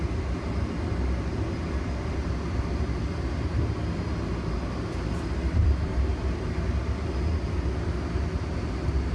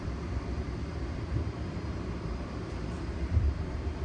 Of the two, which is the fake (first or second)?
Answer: second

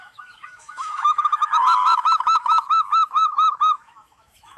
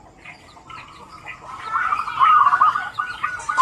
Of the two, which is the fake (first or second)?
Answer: first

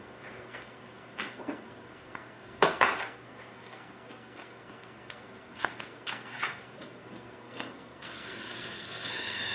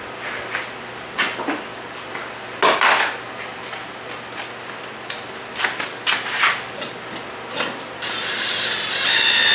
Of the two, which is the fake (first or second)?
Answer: first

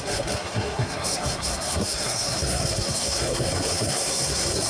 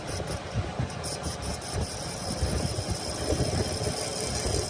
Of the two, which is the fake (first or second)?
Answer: first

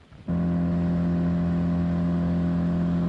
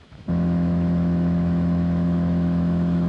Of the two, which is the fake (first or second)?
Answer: second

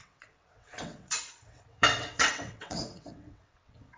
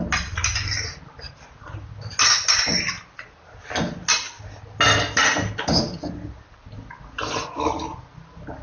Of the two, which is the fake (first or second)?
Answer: first